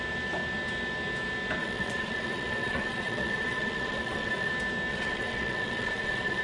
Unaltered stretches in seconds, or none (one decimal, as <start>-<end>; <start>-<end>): 0.0-1.6; 4.5-4.9